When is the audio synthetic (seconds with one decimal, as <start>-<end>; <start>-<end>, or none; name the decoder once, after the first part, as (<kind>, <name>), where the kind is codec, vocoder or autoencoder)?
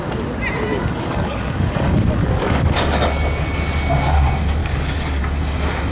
0.7-3.6 (codec, DAC); 4.6-5.2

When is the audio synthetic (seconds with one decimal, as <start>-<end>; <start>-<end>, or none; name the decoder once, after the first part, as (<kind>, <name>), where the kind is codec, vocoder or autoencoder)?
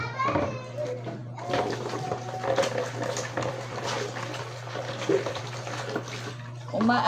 1.2-5.4 (vocoder, BigVGAN v2)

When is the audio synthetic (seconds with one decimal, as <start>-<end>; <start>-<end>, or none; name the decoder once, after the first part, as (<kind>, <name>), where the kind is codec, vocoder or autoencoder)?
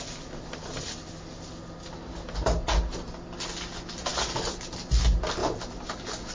none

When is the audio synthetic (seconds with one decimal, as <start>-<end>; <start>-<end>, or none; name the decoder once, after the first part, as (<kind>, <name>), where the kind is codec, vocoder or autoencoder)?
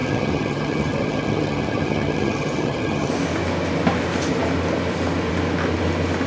0.0-3.1 (vocoder, HiFi-GAN)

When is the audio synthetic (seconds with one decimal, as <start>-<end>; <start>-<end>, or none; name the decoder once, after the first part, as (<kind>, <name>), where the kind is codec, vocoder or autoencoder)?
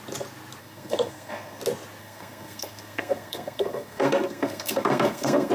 0.6-1.6 (codec, SNAC); 2.0-5.5